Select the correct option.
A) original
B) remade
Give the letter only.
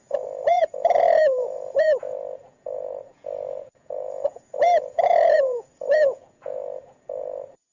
B